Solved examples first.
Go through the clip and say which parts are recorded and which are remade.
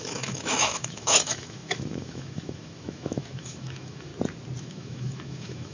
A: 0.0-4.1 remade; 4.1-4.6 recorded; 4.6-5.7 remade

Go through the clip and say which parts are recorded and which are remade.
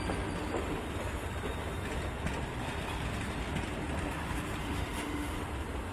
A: 0.0-4.6 recorded; 4.6-5.4 remade; 5.4-5.9 recorded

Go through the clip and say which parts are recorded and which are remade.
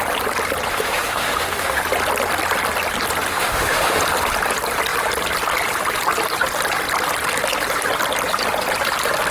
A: 0.0-0.7 recorded; 0.7-1.8 remade; 1.8-3.3 recorded; 3.3-4.0 remade; 4.0-9.3 recorded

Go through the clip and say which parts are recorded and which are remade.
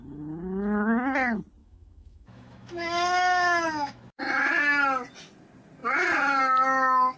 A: 0.0-1.6 recorded; 1.6-4.2 remade; 4.2-7.2 recorded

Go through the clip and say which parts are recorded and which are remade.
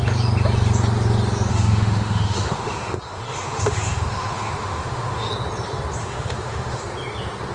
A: 0.0-1.5 recorded; 1.5-5.3 remade; 5.3-6.0 recorded; 6.0-6.8 remade; 6.8-7.5 recorded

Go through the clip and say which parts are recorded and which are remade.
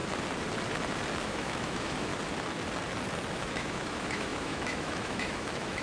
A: 0.0-1.2 recorded; 1.2-2.1 remade; 2.1-3.3 recorded; 3.3-5.8 remade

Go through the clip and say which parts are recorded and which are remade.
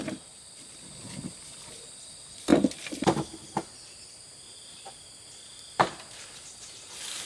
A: 0.0-7.3 recorded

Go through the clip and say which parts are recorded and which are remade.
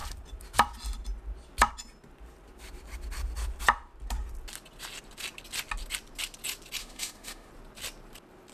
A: 0.0-6.8 recorded; 6.8-7.5 remade; 7.5-8.5 recorded